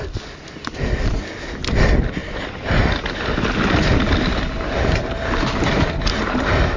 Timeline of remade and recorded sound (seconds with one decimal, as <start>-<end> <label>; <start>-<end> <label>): 0.0-6.8 recorded